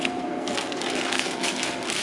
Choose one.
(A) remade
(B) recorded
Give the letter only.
A